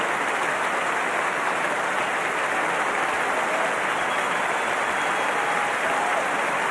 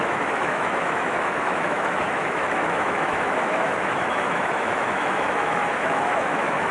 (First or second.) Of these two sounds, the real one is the first